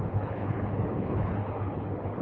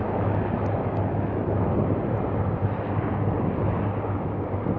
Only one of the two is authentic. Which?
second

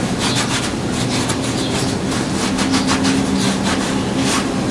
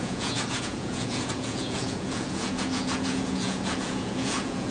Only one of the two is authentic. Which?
first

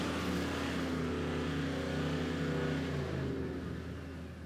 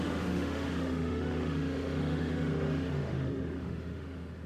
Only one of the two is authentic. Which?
first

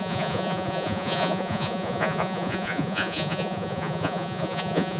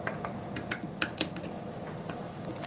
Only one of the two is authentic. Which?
second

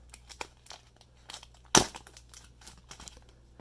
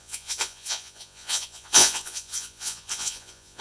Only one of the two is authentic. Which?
first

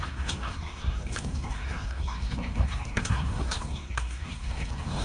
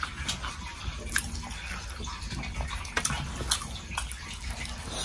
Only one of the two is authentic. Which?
second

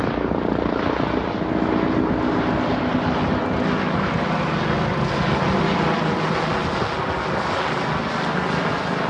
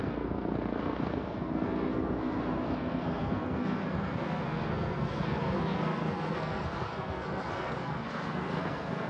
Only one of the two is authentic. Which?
first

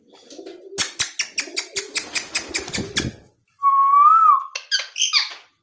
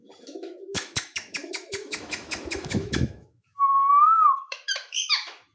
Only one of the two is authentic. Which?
first